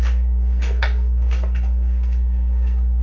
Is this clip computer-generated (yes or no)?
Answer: yes